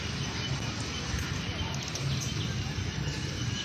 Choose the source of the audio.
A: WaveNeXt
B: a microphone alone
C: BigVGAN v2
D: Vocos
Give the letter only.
B